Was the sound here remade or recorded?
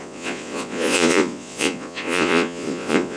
remade